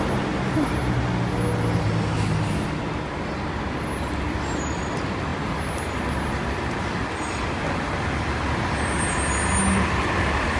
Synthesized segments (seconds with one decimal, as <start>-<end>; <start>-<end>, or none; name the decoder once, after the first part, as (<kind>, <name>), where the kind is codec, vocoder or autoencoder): none